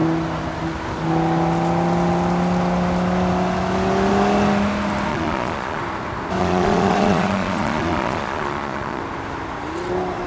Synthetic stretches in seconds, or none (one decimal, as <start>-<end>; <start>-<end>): 5.1-5.8; 6.4-9.0